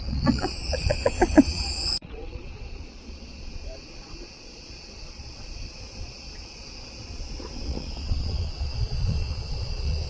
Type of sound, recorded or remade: remade